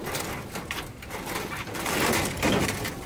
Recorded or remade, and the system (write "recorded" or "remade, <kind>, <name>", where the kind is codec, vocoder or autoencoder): recorded